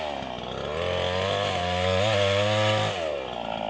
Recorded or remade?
recorded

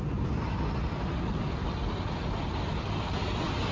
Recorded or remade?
recorded